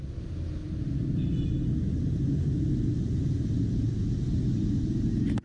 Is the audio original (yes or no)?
yes